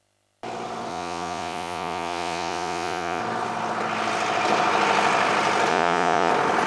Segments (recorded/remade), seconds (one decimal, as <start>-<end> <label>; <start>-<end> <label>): 0.0-0.9 recorded; 0.9-3.2 remade; 3.2-5.7 recorded; 5.7-6.3 remade; 6.3-6.7 recorded